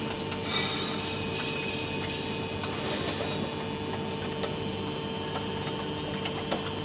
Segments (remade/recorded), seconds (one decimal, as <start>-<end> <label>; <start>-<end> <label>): 0.0-6.8 recorded